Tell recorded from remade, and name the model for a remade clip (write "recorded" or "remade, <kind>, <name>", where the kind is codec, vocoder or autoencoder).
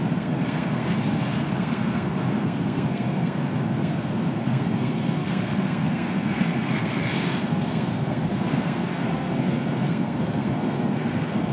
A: remade, codec, SNAC